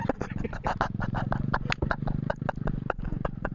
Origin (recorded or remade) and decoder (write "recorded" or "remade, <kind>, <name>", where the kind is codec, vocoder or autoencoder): recorded